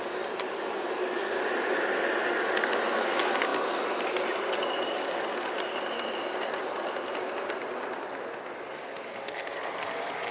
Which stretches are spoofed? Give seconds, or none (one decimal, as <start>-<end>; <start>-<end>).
none